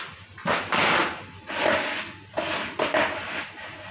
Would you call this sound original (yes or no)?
yes